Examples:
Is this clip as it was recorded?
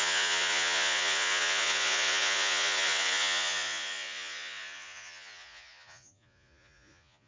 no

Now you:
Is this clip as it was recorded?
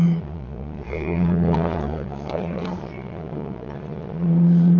no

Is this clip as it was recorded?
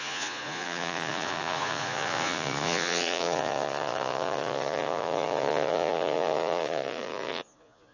no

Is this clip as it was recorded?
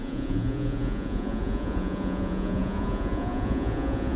no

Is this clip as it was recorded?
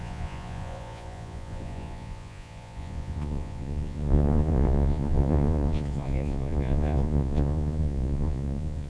no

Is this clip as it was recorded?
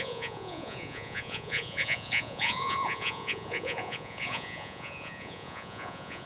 no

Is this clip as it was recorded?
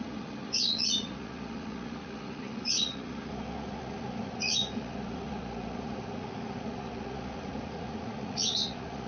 no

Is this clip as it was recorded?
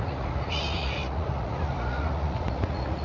no